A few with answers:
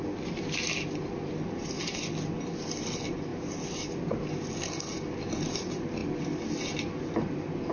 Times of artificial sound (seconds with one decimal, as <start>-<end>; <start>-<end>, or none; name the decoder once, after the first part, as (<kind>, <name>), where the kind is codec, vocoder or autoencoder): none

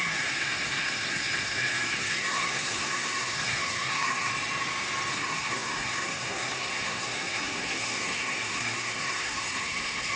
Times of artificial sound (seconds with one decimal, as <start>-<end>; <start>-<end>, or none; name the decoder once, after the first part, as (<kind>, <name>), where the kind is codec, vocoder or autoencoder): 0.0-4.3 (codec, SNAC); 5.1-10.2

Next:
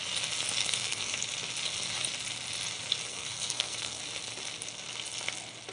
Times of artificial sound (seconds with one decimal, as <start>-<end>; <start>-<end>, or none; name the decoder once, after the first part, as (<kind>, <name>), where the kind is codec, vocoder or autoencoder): 0.6-1.2 (codec, SNAC); 3.1-4.0

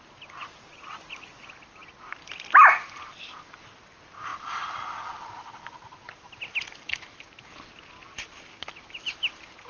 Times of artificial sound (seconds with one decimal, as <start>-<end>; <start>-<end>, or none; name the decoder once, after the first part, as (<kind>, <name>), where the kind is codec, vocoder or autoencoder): none

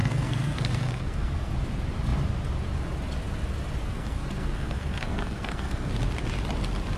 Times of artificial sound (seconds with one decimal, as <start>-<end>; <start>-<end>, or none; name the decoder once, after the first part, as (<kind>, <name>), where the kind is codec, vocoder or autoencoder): 0.0-1.5 (codec, SNAC); 3.8-5.9

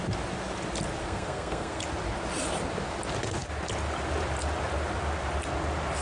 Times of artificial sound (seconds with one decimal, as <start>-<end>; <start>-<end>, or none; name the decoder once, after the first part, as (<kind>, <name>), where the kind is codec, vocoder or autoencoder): 1.0-1.8 (codec, SNAC)

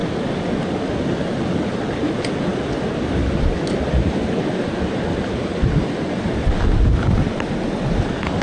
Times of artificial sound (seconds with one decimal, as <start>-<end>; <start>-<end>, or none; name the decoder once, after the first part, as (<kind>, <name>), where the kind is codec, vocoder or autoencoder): none